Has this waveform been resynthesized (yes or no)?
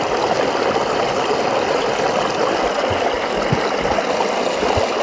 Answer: no